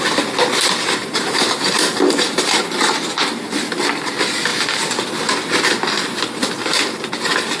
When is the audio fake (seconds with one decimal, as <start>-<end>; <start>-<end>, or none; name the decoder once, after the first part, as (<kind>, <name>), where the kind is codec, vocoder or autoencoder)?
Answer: 1.0-2.6 (vocoder, BigVGAN v2)

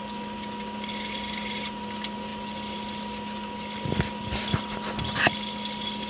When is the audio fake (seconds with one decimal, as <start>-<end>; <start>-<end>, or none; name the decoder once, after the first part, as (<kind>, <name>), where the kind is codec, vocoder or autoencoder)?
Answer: 2.3-6.1 (vocoder, BigVGAN v2)

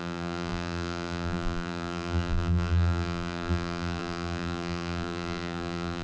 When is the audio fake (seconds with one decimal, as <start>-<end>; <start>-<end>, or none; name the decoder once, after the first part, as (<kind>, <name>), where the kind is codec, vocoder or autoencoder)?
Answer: 0.0-6.0 (vocoder, BigVGAN v2)

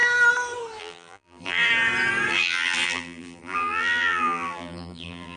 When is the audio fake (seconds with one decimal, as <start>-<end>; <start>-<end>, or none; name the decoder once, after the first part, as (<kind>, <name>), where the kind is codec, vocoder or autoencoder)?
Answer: 0.8-1.7 (vocoder, BigVGAN v2); 2.3-5.4

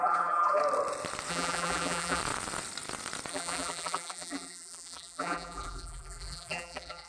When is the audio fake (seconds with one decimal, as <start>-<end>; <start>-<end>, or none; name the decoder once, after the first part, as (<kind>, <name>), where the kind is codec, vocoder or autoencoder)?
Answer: 0.0-0.6 (vocoder, BigVGAN v2); 1.3-2.2; 3.3-7.1

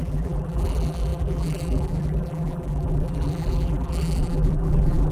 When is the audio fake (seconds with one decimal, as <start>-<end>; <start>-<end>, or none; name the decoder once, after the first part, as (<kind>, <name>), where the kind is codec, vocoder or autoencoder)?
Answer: 0.0-5.1 (vocoder, BigVGAN v2)

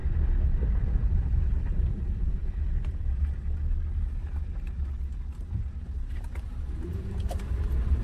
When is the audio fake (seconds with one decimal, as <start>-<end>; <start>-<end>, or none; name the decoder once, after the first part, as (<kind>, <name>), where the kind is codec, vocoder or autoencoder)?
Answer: 1.0-2.4 (vocoder, BigVGAN v2); 6.0-8.0

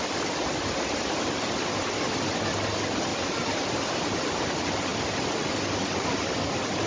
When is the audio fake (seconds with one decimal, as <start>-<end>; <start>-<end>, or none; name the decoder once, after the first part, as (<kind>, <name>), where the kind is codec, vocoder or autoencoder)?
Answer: 3.1-4.4 (vocoder, BigVGAN v2)